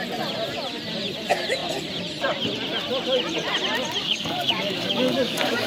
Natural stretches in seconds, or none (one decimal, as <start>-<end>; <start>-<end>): 0.0-4.0